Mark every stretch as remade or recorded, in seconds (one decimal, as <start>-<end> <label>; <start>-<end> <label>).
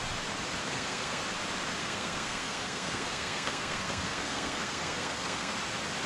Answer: 0.0-0.6 recorded; 0.6-1.2 remade; 1.2-1.8 recorded; 1.8-5.5 remade; 5.5-6.1 recorded